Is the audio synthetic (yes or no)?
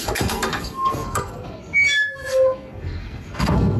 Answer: yes